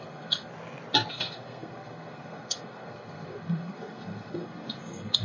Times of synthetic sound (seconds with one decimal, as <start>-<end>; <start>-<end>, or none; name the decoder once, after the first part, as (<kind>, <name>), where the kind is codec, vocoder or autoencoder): 0.0-0.5 (codec, SNAC); 1.1-5.2